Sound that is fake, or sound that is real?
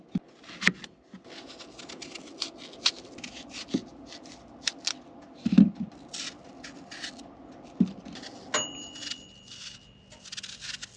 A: real